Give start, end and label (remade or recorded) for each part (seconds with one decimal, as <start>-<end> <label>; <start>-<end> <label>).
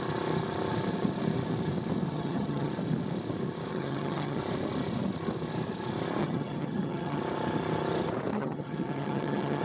0.0-2.1 recorded; 2.1-2.7 remade; 2.7-3.7 recorded; 3.7-4.4 remade; 4.4-6.2 recorded; 6.2-7.2 remade; 7.2-8.3 recorded; 8.3-9.6 remade